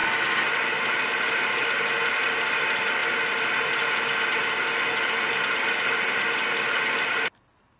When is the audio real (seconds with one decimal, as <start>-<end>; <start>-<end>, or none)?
0.0-7.8